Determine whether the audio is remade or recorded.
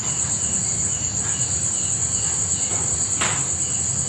recorded